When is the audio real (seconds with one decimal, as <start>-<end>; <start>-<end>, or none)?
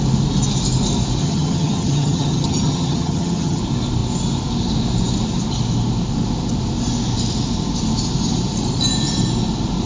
0.0-1.2; 3.6-9.9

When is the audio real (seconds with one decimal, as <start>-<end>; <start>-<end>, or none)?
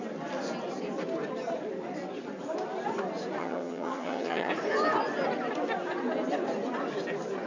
0.0-3.4; 4.5-7.5